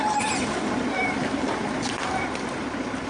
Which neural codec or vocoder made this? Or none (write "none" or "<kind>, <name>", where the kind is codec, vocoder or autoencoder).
none